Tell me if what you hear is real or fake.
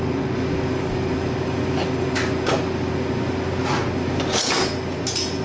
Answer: real